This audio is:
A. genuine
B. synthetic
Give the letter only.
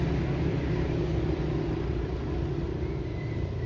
A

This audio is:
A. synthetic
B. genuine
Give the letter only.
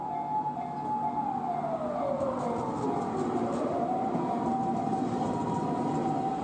B